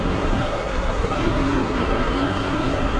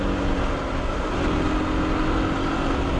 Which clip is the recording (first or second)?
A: second